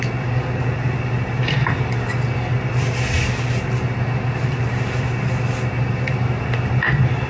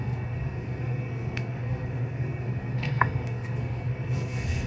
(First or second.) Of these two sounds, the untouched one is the first